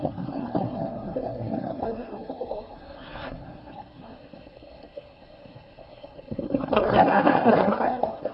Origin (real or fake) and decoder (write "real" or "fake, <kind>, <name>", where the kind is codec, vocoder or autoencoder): fake, codec, SNAC